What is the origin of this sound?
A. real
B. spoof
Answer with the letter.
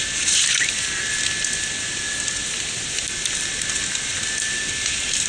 A